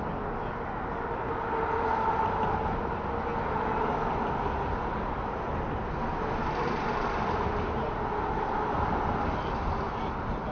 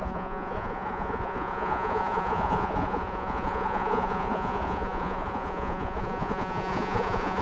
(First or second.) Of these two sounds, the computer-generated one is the second